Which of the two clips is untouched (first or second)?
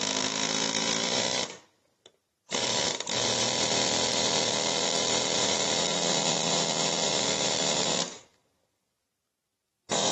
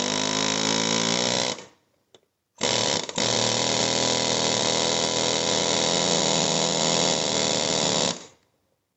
second